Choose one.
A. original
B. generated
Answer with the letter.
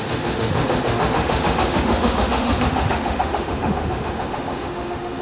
B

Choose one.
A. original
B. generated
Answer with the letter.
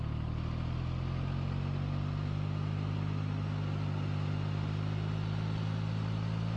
A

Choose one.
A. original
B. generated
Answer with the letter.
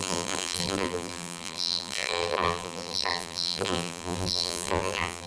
B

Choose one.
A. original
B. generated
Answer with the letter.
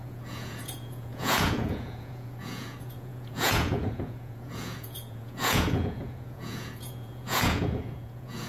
B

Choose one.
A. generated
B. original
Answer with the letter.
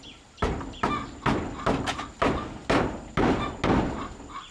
B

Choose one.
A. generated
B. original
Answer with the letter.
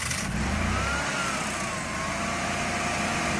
B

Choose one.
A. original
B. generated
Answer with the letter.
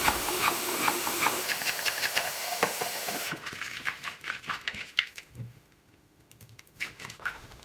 B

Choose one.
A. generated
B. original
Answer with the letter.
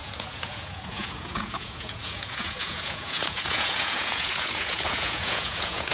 A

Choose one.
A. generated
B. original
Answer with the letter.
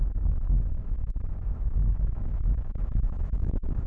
A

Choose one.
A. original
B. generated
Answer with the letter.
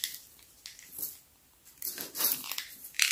A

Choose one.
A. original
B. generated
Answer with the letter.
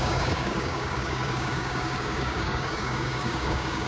B